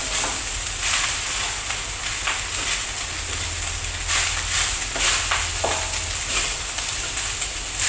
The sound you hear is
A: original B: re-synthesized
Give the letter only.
A